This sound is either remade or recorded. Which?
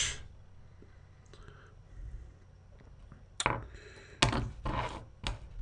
recorded